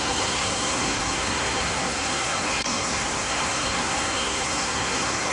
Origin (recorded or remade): remade